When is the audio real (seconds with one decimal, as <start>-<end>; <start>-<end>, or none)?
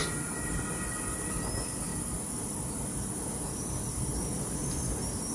0.0-5.3